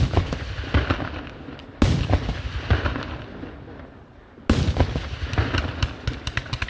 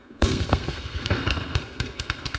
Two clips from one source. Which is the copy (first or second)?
second